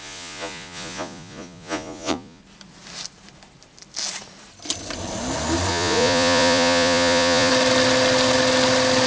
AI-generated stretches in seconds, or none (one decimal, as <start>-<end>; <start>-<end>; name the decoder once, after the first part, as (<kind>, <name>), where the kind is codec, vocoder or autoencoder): 0.0-2.4 (vocoder, Vocos); 5.7-7.5